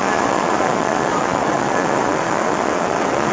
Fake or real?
fake